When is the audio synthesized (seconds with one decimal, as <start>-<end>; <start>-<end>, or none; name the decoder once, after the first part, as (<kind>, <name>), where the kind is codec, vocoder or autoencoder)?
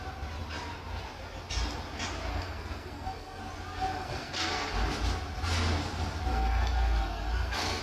2.3-3.4 (codec, SNAC); 3.9-4.7; 6.3-7.8